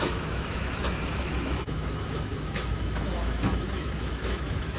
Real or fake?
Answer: fake